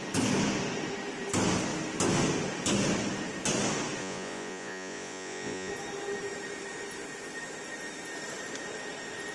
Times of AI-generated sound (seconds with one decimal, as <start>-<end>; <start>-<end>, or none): 4.0-5.7